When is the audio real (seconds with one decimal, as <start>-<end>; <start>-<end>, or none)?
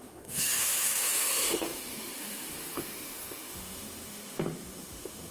none